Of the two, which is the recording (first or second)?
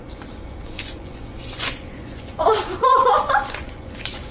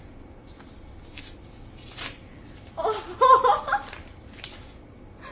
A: second